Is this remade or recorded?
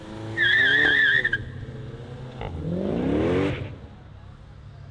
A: recorded